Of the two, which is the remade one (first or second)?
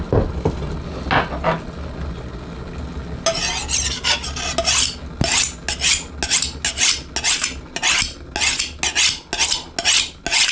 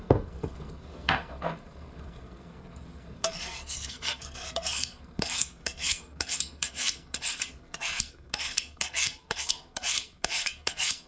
second